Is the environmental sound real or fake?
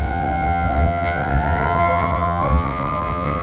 fake